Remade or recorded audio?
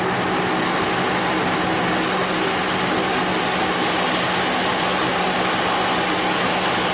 recorded